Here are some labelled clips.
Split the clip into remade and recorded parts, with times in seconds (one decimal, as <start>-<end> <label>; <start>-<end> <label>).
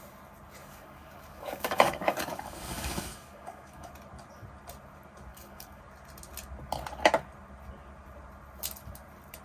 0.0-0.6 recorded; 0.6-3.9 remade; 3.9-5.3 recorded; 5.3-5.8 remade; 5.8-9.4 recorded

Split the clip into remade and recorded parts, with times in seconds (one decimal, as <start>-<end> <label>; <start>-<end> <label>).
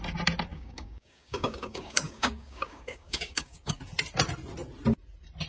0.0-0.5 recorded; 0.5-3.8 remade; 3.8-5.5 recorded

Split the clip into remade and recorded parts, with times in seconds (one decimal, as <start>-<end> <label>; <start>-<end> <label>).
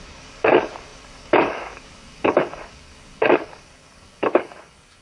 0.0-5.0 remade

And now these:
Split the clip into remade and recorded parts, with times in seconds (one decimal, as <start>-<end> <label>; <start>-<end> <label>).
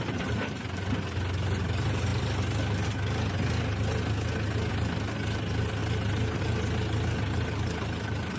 0.0-8.4 recorded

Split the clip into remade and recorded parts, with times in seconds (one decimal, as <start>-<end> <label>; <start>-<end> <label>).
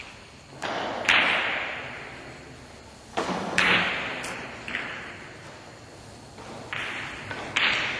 0.0-3.1 recorded; 3.1-3.9 remade; 3.9-8.0 recorded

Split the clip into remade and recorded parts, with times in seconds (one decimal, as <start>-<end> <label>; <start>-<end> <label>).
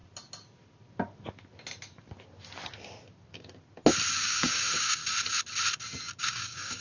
0.0-4.1 recorded; 4.1-5.0 remade; 5.0-6.2 recorded; 6.2-6.8 remade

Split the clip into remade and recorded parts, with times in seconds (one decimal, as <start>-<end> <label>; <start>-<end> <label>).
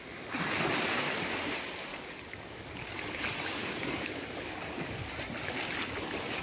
0.0-1.9 recorded; 1.9-3.2 remade; 3.2-3.6 recorded; 3.6-5.1 remade; 5.1-6.4 recorded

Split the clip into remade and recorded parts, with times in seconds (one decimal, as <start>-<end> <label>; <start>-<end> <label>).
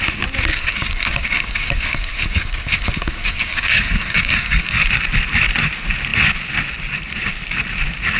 0.0-0.5 recorded; 0.5-4.9 remade; 4.9-8.2 recorded